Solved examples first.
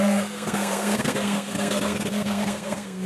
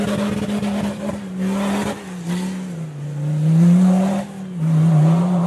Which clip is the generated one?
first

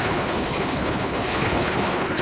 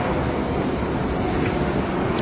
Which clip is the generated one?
first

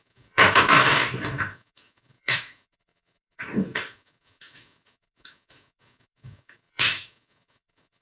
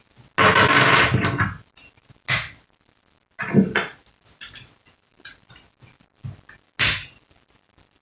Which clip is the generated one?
first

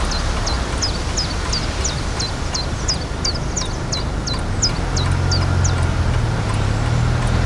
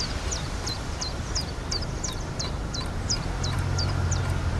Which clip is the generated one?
second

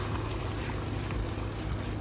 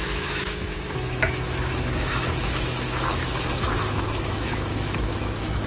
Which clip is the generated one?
second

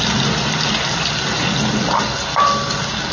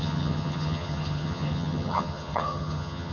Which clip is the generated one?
second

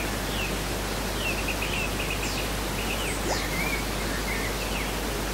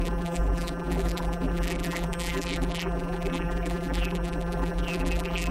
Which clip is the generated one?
second